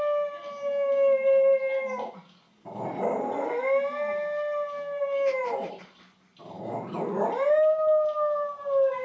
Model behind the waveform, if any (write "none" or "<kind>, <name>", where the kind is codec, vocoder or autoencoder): none